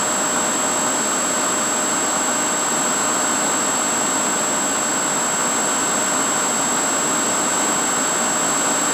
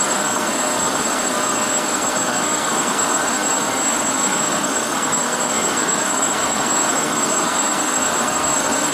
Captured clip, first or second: first